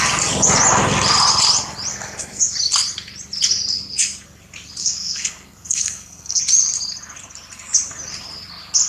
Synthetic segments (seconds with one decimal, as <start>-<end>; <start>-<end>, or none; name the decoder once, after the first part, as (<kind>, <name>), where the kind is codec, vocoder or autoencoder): 1.9-2.4 (codec, SNAC); 4.8-6.4